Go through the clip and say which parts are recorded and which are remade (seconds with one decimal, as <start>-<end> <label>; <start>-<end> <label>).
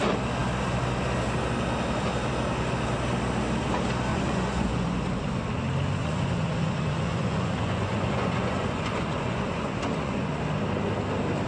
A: 0.0-4.1 recorded; 4.1-5.2 remade; 5.2-6.0 recorded; 6.0-10.4 remade; 10.4-11.5 recorded